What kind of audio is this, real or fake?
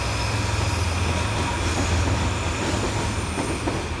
real